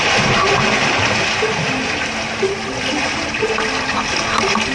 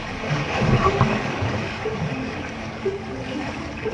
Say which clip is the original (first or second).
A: first